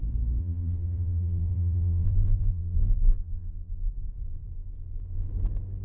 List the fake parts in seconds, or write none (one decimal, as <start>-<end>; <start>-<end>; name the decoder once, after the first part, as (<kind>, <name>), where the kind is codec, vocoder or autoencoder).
0.4-3.9 (vocoder, BigVGAN v2)